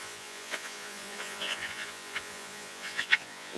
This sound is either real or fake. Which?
fake